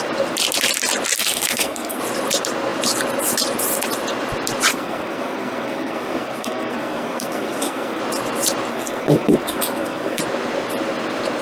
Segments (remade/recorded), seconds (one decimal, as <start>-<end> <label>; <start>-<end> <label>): 0.0-1.2 recorded; 1.2-2.0 remade; 2.0-4.7 recorded; 4.7-8.0 remade; 8.0-8.7 recorded; 8.7-10.2 remade; 10.2-11.4 recorded